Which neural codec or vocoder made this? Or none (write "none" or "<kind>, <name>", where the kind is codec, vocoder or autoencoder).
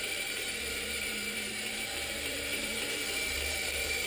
vocoder, BigVGAN v2